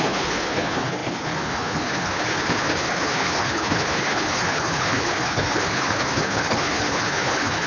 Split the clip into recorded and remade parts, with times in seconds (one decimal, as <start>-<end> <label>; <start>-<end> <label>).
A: 0.0-7.7 remade